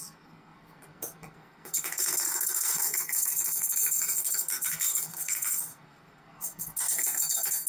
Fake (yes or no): yes